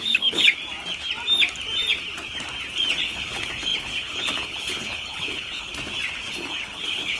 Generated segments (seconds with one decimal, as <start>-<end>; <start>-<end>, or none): 0.0-0.5; 3.0-5.7; 6.3-7.2